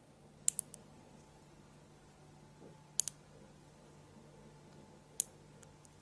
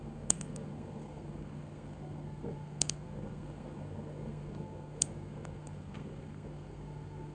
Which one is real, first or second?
first